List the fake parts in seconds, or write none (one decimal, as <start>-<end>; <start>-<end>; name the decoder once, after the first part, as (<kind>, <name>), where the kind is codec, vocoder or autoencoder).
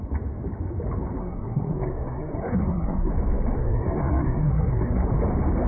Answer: 1.2-3.1 (codec, SNAC); 3.6-5.1